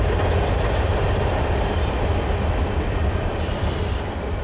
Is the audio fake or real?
real